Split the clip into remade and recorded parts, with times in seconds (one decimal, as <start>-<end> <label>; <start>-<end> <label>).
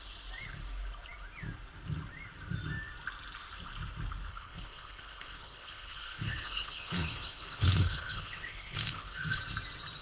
0.0-4.3 recorded; 4.3-9.4 remade; 9.4-10.0 recorded